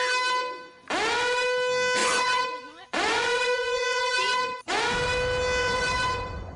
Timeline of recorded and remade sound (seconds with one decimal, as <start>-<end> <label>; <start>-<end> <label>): 0.0-2.0 recorded; 2.0-4.8 remade; 4.8-5.6 recorded; 5.6-6.6 remade

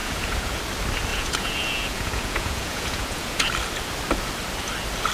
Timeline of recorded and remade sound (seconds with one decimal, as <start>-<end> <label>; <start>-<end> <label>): 0.0-0.6 remade; 0.6-1.1 recorded; 1.1-3.5 remade; 3.5-5.1 recorded

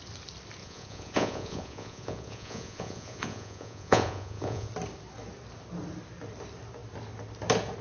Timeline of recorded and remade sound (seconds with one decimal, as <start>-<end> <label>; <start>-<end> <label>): 0.0-0.6 recorded; 0.6-4.7 remade; 4.7-7.8 recorded

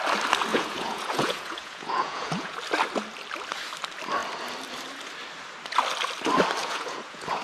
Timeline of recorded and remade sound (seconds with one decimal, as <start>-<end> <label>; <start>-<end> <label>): 0.0-0.5 recorded; 0.5-2.6 remade; 2.6-6.6 recorded; 6.6-7.4 remade

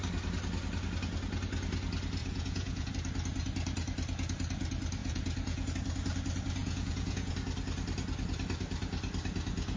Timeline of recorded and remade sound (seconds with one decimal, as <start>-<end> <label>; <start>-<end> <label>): 0.0-2.2 recorded; 2.2-2.9 remade; 2.9-5.0 recorded; 5.0-5.7 remade; 5.7-6.6 recorded; 6.6-7.3 remade; 7.3-9.8 recorded

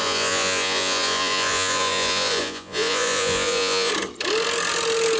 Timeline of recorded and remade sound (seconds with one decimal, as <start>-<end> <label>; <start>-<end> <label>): 0.0-3.9 remade; 3.9-5.2 recorded

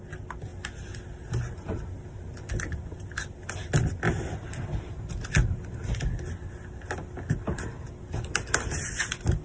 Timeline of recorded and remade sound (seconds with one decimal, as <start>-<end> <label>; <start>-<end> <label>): 0.0-9.4 recorded

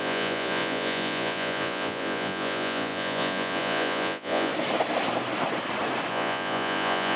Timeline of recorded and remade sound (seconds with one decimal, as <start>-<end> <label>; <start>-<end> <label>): 0.0-4.5 remade; 4.5-6.1 recorded; 6.1-7.2 remade